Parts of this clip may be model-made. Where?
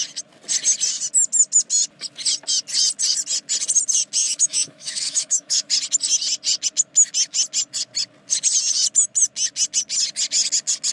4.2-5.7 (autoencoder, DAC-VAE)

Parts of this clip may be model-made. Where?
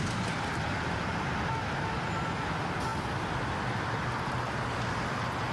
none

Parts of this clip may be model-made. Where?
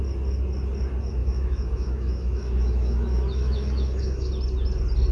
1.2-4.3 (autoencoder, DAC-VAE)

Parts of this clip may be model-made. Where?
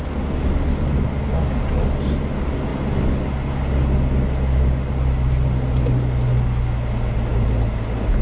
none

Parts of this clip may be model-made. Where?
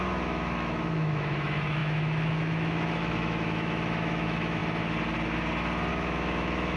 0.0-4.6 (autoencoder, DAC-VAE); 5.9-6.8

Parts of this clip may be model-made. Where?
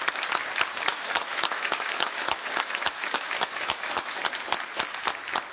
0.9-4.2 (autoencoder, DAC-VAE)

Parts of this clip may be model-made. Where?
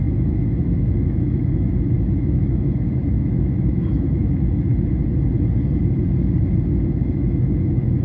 0.0-4.7 (autoencoder, DAC-VAE); 6.9-8.0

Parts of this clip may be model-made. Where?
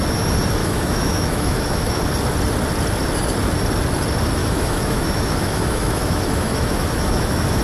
0.6-2.0 (autoencoder, DAC-VAE); 4.4-7.6